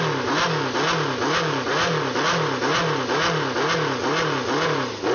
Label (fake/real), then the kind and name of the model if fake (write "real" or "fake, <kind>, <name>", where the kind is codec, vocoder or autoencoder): real